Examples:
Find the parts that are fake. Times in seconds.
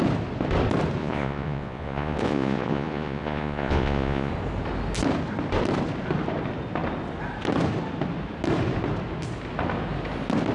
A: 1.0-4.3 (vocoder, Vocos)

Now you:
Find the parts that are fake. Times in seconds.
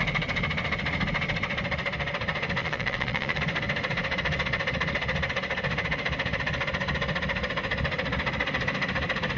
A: 2.6-3.4 (vocoder, Vocos)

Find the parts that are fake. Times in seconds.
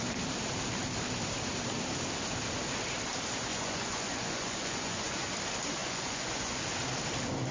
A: 3.5-5.3 (vocoder, Vocos); 5.8-6.6